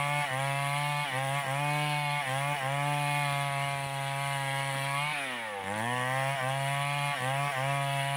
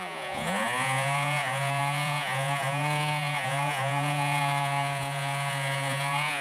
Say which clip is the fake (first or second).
second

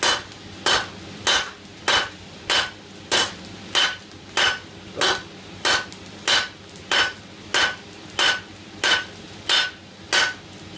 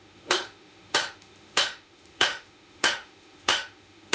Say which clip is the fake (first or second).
second